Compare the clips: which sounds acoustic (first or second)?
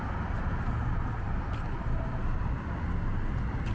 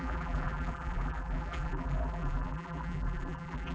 first